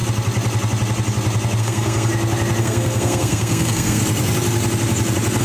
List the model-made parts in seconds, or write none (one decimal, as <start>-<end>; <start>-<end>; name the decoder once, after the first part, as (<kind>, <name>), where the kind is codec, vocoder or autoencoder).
1.6-2.1 (codec, SNAC); 2.6-4.0